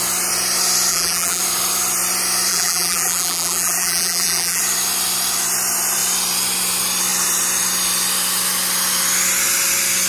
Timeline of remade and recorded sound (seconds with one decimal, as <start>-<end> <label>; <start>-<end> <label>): 0.0-0.9 recorded; 0.9-1.4 remade; 1.4-2.5 recorded; 2.5-4.6 remade; 4.6-10.1 recorded